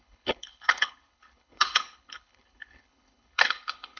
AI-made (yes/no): yes